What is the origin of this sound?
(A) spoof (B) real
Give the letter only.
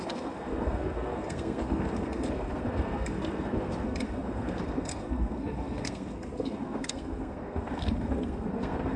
A